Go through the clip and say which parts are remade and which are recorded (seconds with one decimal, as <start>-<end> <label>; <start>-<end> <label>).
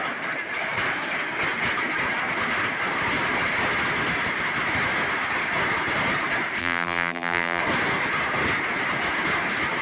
0.0-6.6 recorded; 6.6-7.6 remade; 7.6-9.8 recorded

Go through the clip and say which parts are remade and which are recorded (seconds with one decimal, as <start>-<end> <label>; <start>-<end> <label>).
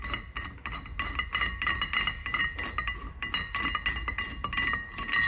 0.0-5.3 recorded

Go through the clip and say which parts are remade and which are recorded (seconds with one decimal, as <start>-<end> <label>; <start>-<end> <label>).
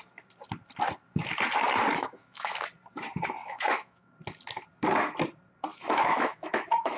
0.0-1.9 recorded; 1.9-2.5 remade; 2.5-3.4 recorded; 3.4-4.1 remade; 4.1-5.7 recorded; 5.7-7.0 remade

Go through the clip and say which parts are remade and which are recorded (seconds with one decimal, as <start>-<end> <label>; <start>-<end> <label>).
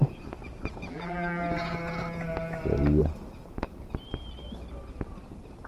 0.0-0.9 recorded; 0.9-1.4 remade; 1.4-5.7 recorded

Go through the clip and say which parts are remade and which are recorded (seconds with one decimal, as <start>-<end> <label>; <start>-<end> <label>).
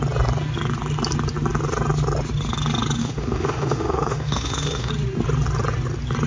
0.0-3.0 recorded; 3.0-4.9 remade; 4.9-6.3 recorded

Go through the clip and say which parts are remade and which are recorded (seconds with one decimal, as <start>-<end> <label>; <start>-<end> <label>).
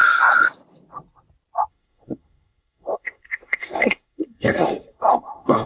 0.0-1.7 recorded; 1.7-5.7 remade